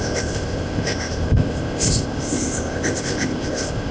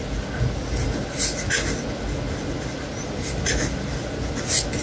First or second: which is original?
second